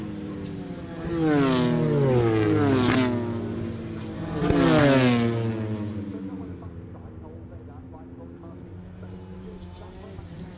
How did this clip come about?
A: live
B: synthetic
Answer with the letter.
A